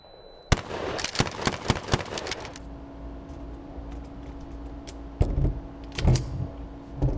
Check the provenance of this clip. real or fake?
real